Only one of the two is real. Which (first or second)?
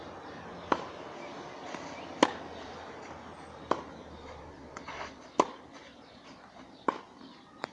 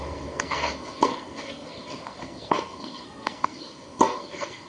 first